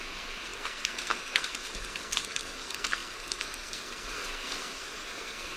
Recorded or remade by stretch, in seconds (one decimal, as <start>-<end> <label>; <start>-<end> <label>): 0.0-5.6 remade